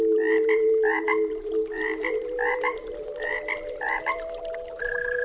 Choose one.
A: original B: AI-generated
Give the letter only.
B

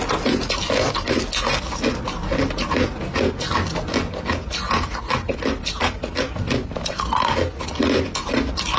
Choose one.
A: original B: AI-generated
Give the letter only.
A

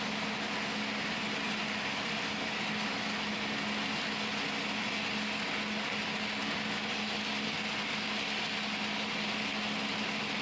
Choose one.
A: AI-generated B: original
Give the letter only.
B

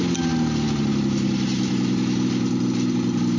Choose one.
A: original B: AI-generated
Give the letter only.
A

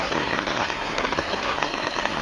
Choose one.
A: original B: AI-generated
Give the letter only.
B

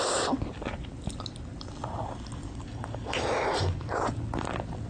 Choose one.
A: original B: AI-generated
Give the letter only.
A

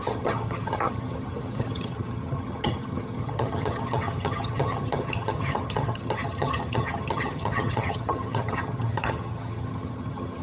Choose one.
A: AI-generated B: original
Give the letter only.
A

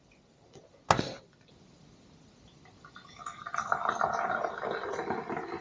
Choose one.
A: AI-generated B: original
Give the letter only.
B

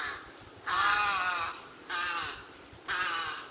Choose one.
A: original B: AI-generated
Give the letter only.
A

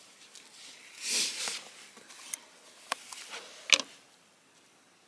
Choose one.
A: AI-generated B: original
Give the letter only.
B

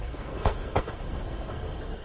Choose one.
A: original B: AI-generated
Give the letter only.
B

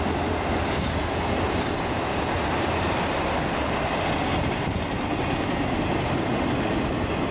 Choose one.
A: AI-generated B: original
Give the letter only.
B